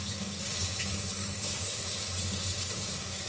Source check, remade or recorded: remade